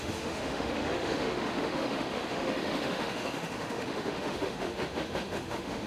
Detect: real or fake fake